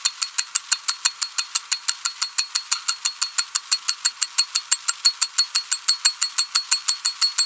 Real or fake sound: real